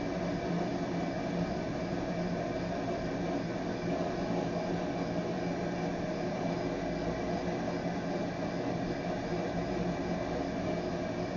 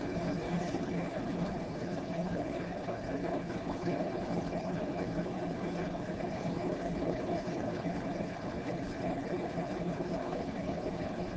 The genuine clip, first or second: first